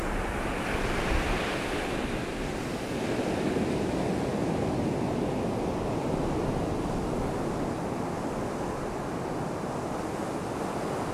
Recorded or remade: recorded